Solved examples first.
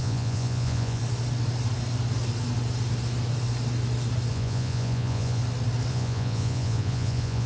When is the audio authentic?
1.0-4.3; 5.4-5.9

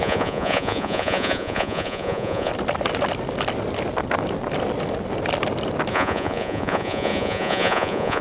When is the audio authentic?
2.5-5.9

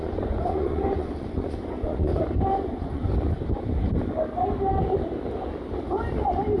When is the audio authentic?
2.1-2.7; 3.1-6.6

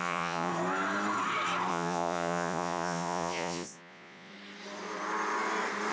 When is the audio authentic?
0.5-1.7; 4.3-5.9

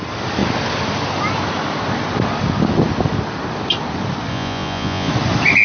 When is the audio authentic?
0.0-4.3; 5.1-5.6

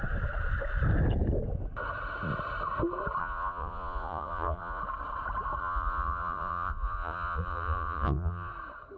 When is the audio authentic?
0.0-3.2; 4.8-5.6; 8.5-9.0